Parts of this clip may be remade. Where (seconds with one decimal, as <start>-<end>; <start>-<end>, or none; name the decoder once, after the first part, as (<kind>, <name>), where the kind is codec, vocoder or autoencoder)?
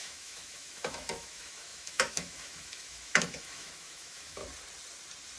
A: 0.0-4.4 (autoencoder, DAC-VAE)